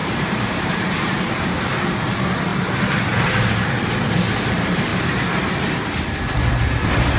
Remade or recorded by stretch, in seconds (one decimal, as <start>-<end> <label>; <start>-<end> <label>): 0.0-1.8 remade; 1.8-4.9 recorded; 4.9-5.5 remade; 5.5-7.2 recorded

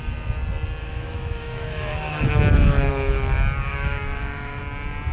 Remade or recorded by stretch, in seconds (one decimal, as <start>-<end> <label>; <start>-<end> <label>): 0.0-0.8 recorded; 0.8-2.9 remade; 2.9-3.7 recorded; 3.7-4.6 remade; 4.6-5.1 recorded

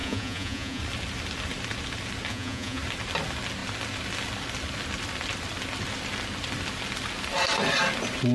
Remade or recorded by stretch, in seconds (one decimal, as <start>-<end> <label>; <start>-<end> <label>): 0.0-0.8 remade; 0.8-2.3 recorded; 2.3-2.8 remade; 2.8-8.3 recorded

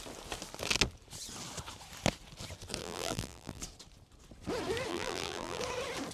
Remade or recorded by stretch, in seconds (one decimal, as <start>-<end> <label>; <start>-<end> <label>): 0.0-2.8 recorded; 2.8-3.6 remade; 3.6-4.9 recorded; 4.9-5.6 remade; 5.6-6.1 recorded

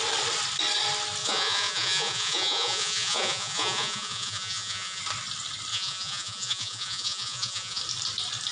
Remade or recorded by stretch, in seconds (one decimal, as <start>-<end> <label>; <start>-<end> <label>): 0.0-1.2 recorded; 1.2-5.0 remade; 5.0-5.7 recorded; 5.7-7.8 remade; 7.8-8.5 recorded